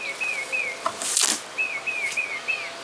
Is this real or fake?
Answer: real